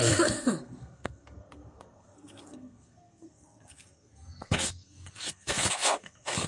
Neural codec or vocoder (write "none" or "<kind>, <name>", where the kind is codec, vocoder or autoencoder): codec, SNAC